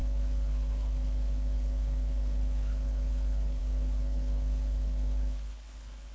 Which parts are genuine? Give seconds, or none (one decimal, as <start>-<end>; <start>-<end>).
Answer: none